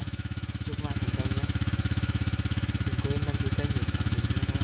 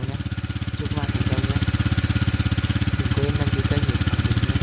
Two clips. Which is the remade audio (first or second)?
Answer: first